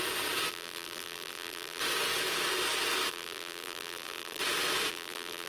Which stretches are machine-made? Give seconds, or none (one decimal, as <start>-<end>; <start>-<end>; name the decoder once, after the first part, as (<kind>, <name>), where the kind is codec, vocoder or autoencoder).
0.5-1.8 (vocoder, BigVGAN v2); 3.1-4.4; 4.9-5.5